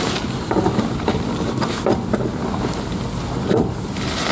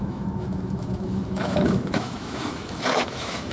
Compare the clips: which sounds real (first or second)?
first